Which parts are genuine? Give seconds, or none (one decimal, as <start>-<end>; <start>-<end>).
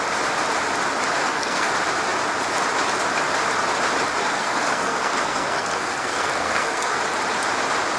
0.0-1.2; 1.7-4.2; 7.0-8.0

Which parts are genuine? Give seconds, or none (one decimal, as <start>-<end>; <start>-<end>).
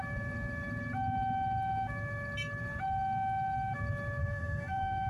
0.0-4.2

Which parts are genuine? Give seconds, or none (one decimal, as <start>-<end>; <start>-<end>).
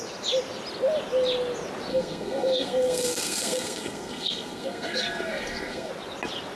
0.0-1.9; 5.9-6.6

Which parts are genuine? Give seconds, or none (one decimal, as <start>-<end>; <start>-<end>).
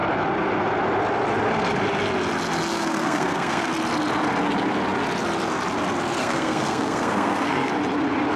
0.0-2.7; 3.7-6.2; 7.7-8.4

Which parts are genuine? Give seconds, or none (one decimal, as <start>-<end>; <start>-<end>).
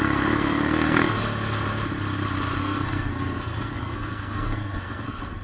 1.2-2.6